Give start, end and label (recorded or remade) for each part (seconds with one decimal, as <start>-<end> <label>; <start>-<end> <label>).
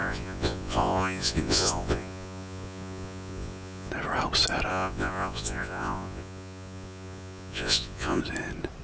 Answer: 0.0-3.9 remade; 3.9-4.7 recorded; 4.7-8.2 remade; 8.2-8.8 recorded